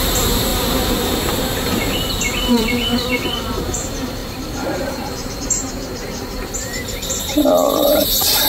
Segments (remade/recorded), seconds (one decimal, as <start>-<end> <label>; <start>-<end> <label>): 0.0-8.5 remade